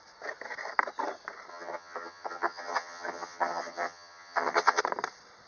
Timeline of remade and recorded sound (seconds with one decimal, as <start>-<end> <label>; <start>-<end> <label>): 0.0-1.5 recorded; 1.5-4.8 remade; 4.8-5.5 recorded